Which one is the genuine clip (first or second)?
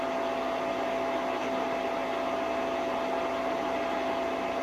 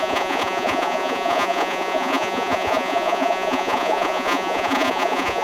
first